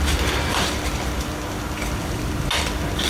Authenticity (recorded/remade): recorded